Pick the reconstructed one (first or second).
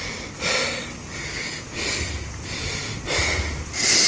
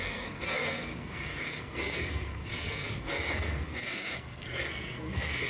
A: second